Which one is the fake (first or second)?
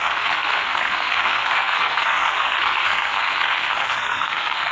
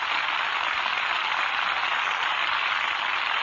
first